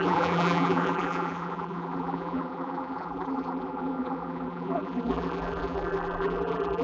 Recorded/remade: remade